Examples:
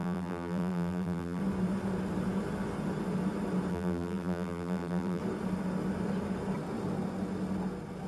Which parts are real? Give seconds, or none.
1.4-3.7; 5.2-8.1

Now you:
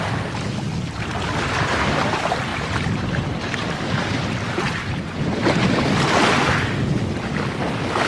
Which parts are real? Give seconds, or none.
0.0-2.5; 5.0-8.1